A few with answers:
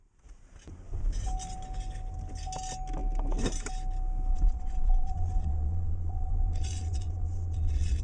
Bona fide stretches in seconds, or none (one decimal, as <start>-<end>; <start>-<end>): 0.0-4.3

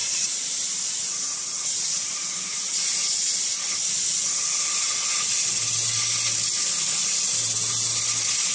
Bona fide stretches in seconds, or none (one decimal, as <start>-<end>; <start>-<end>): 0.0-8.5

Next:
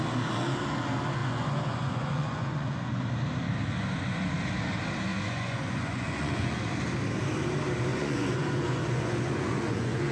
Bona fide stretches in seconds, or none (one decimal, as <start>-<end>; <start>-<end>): 0.0-1.2; 3.0-5.1; 6.6-7.9

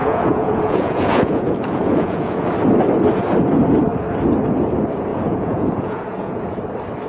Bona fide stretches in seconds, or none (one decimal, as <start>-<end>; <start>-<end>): 2.5-5.1; 6.6-7.1